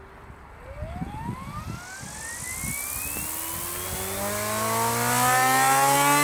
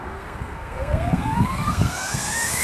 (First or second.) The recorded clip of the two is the first